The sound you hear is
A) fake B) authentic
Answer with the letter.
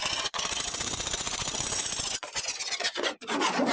A